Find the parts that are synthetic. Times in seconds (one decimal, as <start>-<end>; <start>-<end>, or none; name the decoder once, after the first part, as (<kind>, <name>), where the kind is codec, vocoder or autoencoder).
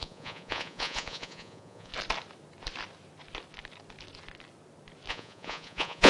0.0-1.9 (vocoder, Vocos); 5.1-6.1